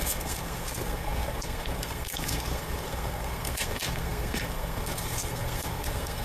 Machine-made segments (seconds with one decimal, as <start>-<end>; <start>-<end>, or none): 0.0-6.2